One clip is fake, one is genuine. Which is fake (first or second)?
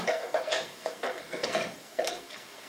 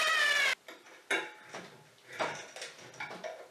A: first